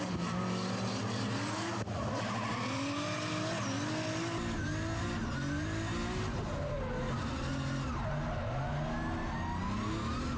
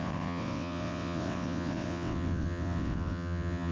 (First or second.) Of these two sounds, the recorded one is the first